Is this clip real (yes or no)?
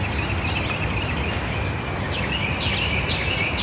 yes